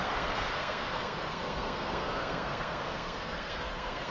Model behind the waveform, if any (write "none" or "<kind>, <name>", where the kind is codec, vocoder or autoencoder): codec, SNAC